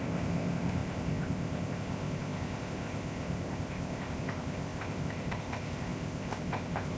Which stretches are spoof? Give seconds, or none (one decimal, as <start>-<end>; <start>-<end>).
0.0-7.0